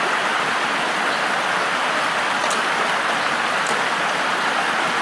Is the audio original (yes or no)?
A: yes